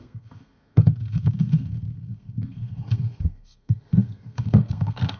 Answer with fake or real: fake